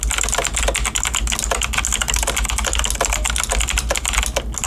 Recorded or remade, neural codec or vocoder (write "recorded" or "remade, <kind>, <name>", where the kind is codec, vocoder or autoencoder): recorded